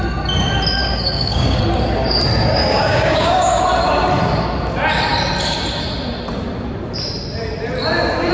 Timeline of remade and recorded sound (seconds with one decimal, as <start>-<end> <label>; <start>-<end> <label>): 0.0-0.8 recorded; 0.8-1.6 remade; 1.6-2.6 recorded; 2.6-3.6 remade; 3.6-8.3 recorded